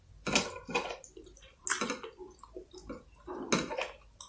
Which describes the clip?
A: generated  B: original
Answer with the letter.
B